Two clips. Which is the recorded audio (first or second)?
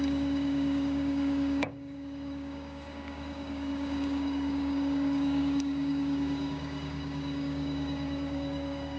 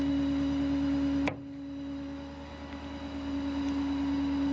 second